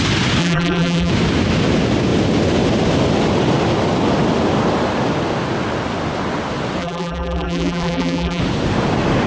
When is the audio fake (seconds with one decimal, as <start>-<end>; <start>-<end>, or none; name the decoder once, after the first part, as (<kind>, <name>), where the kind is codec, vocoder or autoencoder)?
0.4-1.1 (vocoder, BigVGAN v2); 6.8-8.4